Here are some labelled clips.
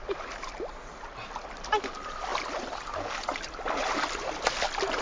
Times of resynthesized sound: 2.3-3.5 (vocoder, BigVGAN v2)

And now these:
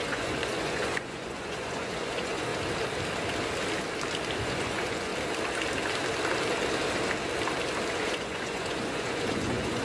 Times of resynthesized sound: 0.0-2.5 (vocoder, Vocos); 4.4-5.1; 7.9-9.8

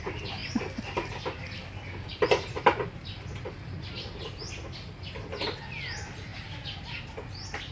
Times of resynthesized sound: none

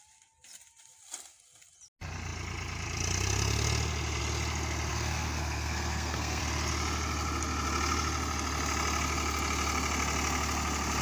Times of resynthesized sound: 4.9-6.4 (codec, SNAC)

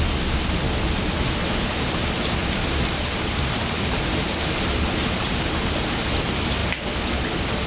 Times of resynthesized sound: 2.4-6.0 (vocoder, BigVGAN v2)

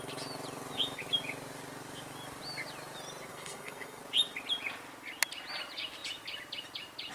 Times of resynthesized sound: 3.3-4.0 (codec, SNAC)